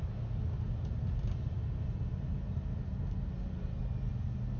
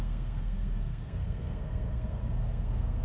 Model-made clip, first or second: second